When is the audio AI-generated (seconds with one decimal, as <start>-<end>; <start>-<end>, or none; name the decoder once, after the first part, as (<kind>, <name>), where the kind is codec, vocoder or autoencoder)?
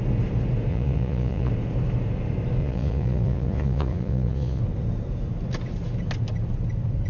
0.7-1.5 (vocoder, Vocos); 2.6-4.6